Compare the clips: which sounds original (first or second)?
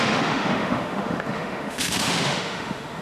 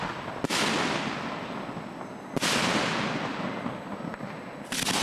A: second